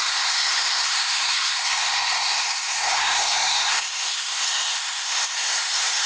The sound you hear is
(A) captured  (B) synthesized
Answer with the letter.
B